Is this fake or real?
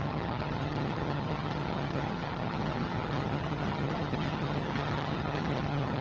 fake